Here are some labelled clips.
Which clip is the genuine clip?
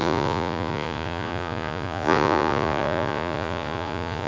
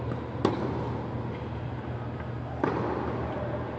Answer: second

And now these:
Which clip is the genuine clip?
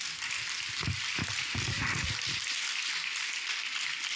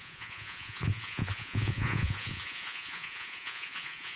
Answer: first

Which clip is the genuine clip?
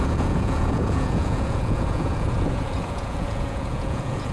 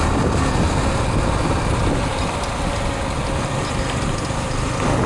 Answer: second